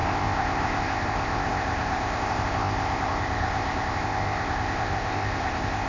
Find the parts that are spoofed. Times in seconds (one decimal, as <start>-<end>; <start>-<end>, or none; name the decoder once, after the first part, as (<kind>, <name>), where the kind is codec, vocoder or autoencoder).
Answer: 0.0-5.9 (codec, ZipCodec)